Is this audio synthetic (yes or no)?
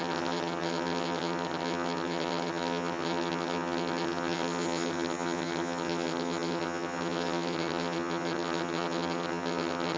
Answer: yes